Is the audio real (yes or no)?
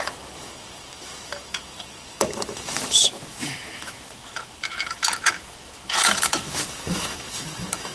no